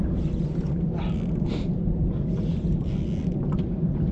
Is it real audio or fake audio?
real